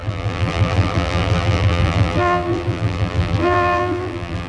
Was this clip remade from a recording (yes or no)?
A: yes